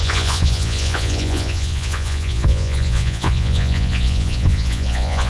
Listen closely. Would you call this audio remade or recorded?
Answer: remade